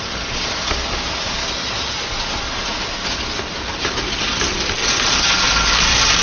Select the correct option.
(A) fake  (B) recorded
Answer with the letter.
B